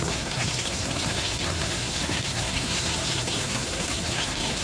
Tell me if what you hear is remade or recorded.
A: remade